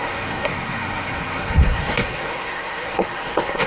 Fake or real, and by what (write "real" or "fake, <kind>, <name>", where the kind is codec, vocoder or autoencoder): fake, codec, SNAC